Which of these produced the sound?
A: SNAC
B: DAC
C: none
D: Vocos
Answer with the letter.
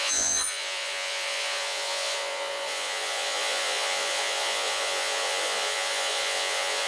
D